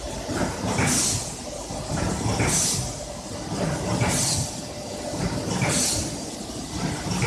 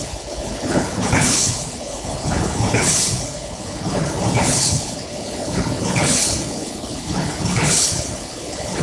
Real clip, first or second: first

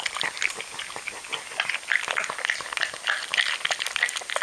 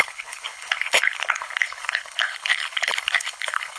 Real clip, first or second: first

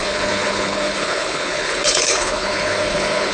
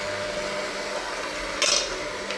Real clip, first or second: second